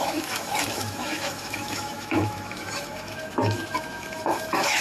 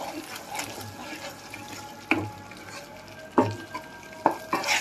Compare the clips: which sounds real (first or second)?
second